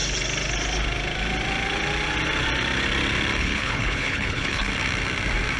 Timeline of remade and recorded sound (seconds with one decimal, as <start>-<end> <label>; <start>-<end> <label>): 0.0-3.4 recorded; 3.4-4.7 remade; 4.7-5.6 recorded